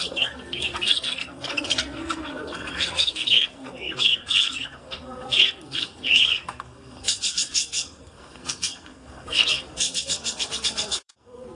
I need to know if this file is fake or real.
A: fake